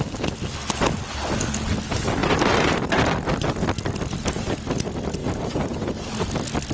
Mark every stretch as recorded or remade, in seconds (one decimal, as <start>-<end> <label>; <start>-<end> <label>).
0.0-2.2 recorded; 2.2-2.8 remade; 2.8-5.2 recorded; 5.2-6.0 remade; 6.0-6.7 recorded